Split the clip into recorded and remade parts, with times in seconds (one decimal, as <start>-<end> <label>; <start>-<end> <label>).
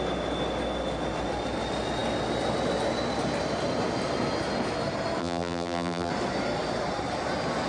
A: 0.0-5.2 recorded; 5.2-6.1 remade; 6.1-7.7 recorded